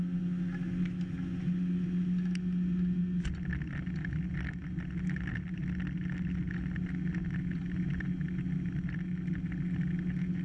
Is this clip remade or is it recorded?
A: recorded